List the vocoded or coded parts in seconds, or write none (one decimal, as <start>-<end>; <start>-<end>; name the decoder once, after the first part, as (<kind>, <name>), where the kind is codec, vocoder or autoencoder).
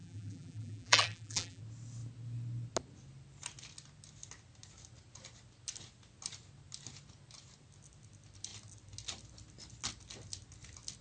0.0-1.6 (vocoder, BigVGAN v2)